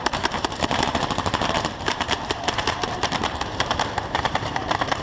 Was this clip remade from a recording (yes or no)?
yes